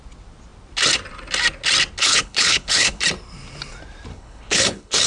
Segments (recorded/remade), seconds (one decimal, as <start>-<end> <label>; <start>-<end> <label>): 0.0-2.0 recorded; 2.0-3.0 remade; 3.0-4.1 recorded; 4.1-5.1 remade